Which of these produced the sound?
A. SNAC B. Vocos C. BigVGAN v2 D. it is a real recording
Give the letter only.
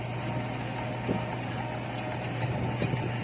D